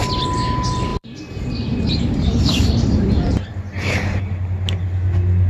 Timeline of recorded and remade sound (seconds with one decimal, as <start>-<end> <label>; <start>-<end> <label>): 0.0-0.9 recorded; 0.9-4.2 remade; 4.2-5.5 recorded

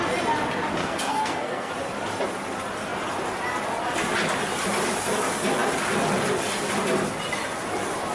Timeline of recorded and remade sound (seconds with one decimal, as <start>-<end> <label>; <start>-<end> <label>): 0.0-0.8 recorded; 0.8-1.7 remade; 1.7-8.1 recorded

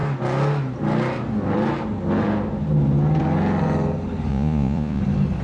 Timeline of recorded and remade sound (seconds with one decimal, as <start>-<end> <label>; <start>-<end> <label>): 0.0-4.3 recorded; 4.3-5.0 remade; 5.0-5.4 recorded

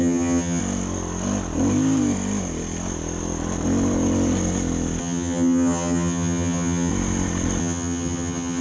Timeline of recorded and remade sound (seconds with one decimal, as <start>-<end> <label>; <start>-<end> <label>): 0.0-0.6 remade; 0.6-5.0 recorded; 5.0-6.9 remade; 6.9-7.6 recorded; 7.6-8.6 remade